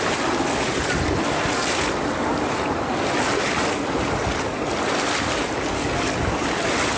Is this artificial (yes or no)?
no